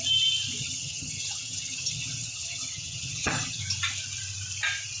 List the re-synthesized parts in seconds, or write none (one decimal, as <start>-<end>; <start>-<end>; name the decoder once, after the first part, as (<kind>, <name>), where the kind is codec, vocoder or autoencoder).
0.6-3.6 (vocoder, HiFi-GAN)